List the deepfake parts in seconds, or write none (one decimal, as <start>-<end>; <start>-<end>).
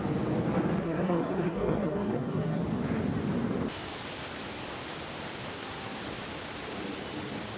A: 0.8-2.6; 5.5-6.0